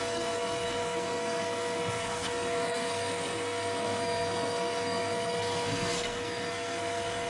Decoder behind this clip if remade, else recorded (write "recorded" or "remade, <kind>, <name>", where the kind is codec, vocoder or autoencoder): remade, codec, SNAC